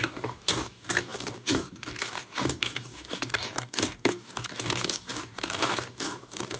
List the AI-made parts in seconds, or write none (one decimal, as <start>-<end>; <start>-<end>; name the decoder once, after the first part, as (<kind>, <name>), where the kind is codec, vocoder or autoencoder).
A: 0.0-6.6 (codec, DAC)